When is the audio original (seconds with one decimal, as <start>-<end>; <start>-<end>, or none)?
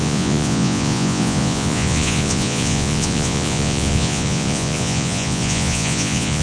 none